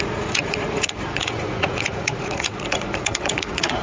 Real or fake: fake